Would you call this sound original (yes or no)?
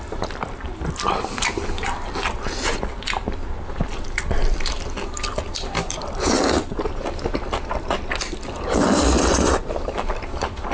no